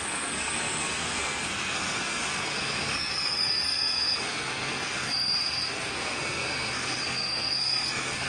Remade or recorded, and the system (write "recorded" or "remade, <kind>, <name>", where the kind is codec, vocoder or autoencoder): remade, codec, SNAC